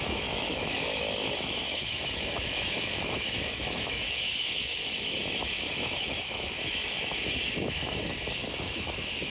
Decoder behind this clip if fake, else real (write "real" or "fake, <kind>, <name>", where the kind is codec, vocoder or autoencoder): fake, autoencoder, DAC-VAE